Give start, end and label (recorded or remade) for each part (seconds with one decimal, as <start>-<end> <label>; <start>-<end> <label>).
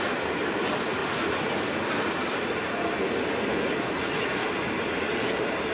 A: 0.0-5.7 recorded